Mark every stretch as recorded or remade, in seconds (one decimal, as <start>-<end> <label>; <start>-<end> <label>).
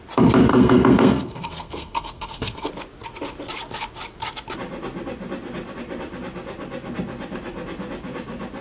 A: 0.0-0.5 recorded; 0.5-2.7 remade; 2.7-8.6 recorded